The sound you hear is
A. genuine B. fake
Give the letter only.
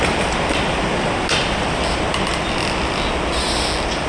A